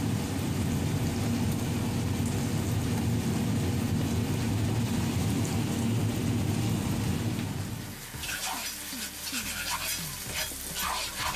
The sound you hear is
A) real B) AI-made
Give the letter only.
A